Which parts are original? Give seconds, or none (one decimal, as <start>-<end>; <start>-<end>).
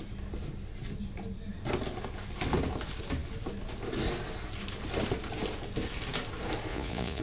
0.0-6.7